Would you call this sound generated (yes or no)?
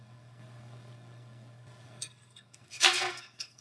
yes